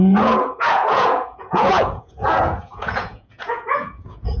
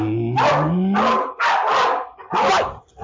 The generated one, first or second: first